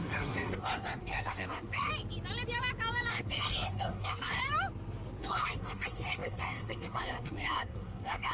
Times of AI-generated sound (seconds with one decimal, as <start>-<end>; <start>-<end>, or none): 0.0-1.9; 3.1-4.4; 5.2-8.3